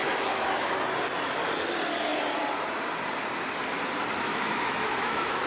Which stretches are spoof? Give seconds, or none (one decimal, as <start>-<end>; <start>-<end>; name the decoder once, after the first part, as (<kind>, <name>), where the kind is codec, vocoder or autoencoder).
0.0-0.7 (autoencoder, DAC-VAE); 4.3-5.5